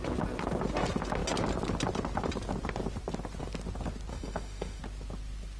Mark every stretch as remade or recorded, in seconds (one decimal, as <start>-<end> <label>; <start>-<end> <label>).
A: 0.0-4.1 recorded; 4.1-4.8 remade; 4.8-5.6 recorded